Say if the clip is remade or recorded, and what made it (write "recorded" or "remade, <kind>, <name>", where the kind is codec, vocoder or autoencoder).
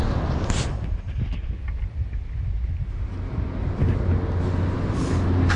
recorded